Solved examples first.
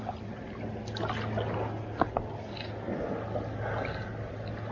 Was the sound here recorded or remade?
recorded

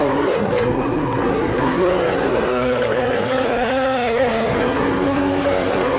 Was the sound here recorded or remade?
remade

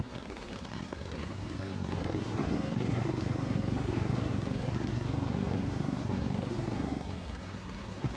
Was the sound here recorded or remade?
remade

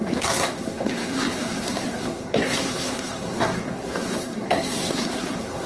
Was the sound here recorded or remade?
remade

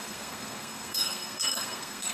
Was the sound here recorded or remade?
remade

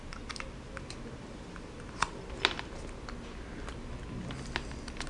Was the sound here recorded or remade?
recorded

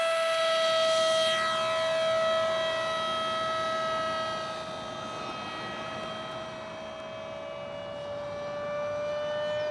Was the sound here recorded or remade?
recorded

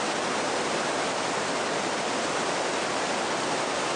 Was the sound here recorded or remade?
recorded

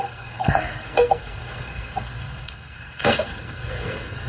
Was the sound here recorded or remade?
remade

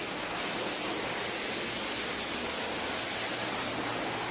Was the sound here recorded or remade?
recorded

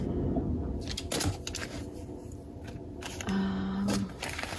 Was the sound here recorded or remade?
recorded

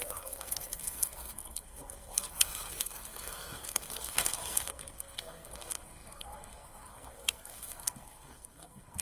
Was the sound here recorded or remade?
remade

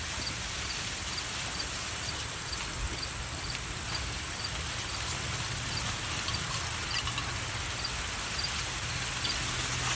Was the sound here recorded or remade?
recorded